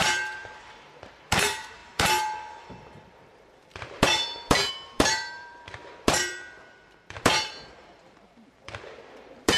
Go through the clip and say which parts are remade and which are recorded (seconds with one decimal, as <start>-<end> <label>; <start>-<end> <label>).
0.0-9.6 remade